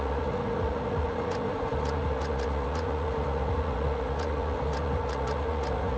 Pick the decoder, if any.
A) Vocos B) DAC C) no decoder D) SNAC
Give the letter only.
A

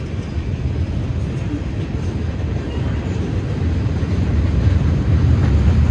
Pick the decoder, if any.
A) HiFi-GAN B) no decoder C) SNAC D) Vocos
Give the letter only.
B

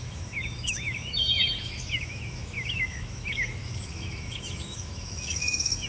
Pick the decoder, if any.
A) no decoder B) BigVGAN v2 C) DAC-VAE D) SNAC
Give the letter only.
C